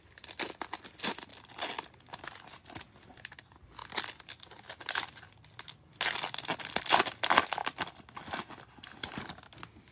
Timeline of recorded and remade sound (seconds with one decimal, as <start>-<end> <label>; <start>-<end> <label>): 0.0-9.9 recorded